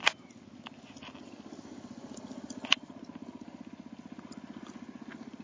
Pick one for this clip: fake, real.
real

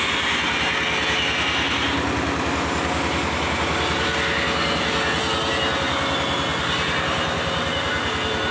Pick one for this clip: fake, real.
real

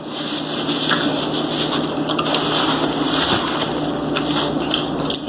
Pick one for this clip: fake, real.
real